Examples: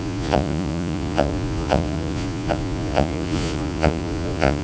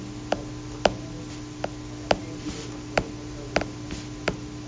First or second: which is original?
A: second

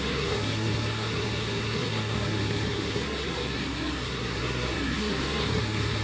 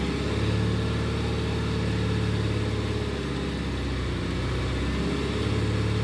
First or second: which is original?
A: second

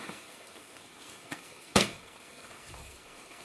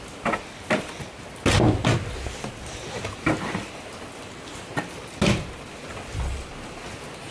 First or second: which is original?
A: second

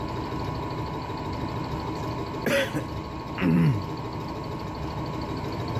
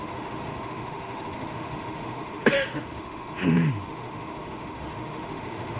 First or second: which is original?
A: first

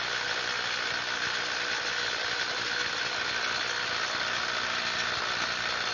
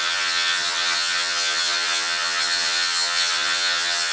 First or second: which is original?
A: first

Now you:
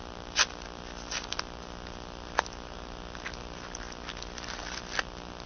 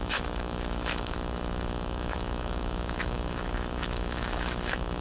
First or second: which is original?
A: first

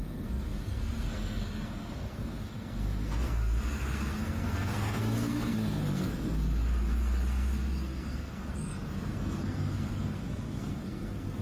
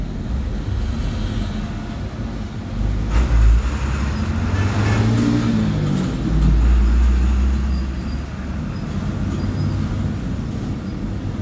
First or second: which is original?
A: second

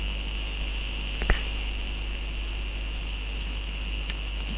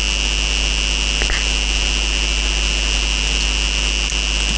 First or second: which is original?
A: second